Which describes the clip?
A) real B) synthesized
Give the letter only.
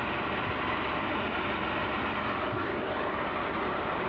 A